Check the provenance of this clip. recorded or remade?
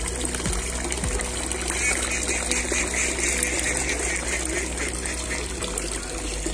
recorded